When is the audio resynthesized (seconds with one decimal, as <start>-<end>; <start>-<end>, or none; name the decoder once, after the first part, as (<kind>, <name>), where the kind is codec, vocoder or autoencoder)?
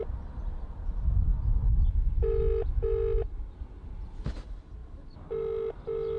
none